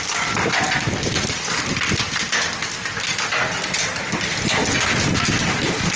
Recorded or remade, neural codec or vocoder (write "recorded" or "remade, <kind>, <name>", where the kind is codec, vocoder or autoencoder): recorded